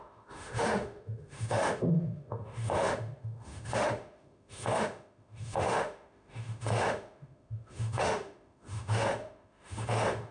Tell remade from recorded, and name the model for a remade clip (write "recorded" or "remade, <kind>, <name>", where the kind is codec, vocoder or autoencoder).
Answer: remade, autoencoder, DAC-VAE